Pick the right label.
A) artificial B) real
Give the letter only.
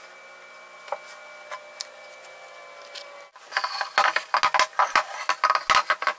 B